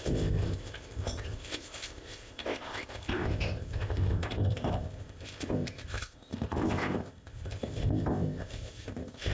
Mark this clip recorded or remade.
remade